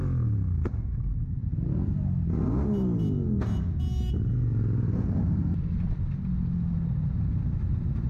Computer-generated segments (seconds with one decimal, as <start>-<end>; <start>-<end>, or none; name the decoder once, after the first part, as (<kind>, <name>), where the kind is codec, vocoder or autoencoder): none